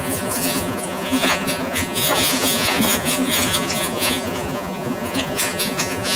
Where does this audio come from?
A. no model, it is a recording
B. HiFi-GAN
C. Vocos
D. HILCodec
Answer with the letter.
C